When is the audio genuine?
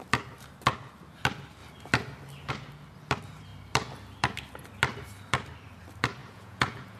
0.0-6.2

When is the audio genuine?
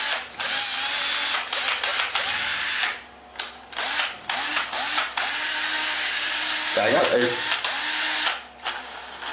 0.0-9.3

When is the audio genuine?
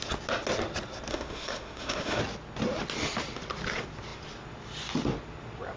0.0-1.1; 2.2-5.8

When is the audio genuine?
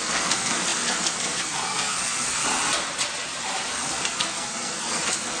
2.4-3.7